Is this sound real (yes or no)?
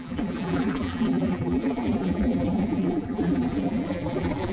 no